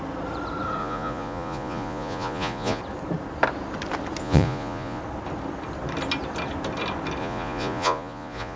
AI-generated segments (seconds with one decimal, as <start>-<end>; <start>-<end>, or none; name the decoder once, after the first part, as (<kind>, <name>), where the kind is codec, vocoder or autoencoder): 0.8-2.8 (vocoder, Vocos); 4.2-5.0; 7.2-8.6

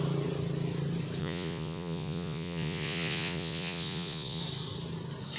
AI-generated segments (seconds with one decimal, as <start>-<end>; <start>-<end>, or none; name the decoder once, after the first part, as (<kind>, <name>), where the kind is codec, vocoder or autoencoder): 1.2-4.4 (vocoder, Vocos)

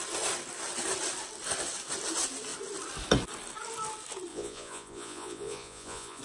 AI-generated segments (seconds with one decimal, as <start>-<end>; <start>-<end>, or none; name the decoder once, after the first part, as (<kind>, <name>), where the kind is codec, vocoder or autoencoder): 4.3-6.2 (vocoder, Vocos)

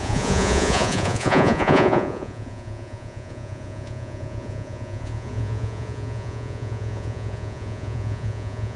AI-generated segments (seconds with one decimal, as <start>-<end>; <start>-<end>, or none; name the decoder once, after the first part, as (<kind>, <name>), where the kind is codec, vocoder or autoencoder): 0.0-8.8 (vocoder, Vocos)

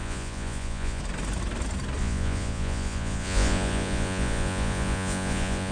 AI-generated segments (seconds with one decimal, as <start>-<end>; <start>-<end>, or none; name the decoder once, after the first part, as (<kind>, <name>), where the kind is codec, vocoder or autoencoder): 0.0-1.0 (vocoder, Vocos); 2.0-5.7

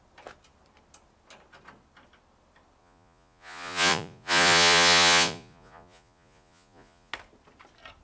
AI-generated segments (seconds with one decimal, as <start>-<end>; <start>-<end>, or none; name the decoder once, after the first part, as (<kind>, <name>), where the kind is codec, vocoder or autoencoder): 2.8-7.1 (vocoder, Vocos)